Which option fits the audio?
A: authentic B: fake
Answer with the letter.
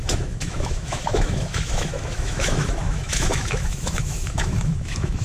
B